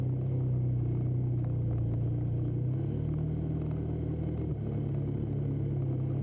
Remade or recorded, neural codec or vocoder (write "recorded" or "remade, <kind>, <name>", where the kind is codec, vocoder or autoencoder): recorded